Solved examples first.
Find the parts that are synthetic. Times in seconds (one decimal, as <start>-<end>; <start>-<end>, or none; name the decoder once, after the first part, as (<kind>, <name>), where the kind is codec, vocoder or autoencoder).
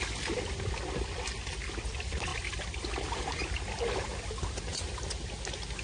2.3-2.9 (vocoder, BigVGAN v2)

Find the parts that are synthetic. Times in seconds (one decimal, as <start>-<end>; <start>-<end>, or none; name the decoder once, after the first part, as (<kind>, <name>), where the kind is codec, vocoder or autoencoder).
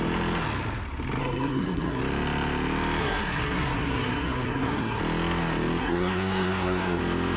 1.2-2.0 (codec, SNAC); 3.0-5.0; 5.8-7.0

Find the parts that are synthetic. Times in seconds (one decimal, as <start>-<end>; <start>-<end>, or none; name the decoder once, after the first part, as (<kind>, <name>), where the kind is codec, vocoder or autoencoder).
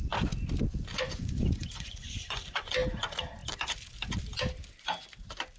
0.9-2.7 (vocoder, Vocos)